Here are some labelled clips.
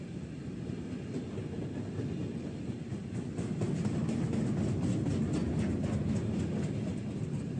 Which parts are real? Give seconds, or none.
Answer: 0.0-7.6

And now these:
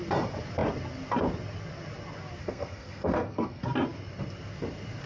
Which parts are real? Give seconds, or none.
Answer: 0.0-2.4; 3.6-5.1

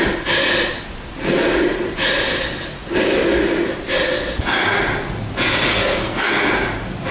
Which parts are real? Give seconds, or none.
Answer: 0.0-5.7; 6.3-7.1

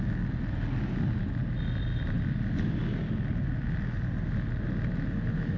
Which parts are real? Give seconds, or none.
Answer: 0.0-5.6

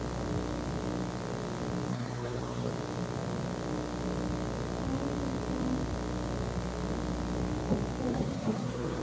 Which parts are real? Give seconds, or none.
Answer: 0.0-1.9; 2.7-8.1

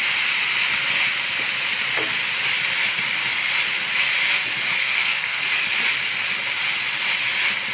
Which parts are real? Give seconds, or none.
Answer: 0.0-4.8; 5.4-7.7

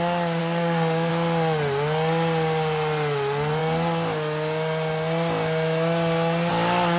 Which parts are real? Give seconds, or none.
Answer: 0.0-0.4; 1.1-7.0

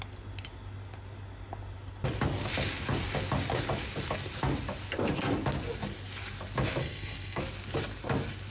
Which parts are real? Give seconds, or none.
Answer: 0.0-6.8; 7.4-8.5